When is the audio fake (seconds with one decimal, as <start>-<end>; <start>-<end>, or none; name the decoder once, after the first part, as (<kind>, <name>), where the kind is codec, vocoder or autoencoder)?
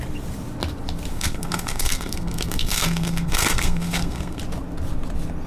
1.1-4.4 (codec, SNAC)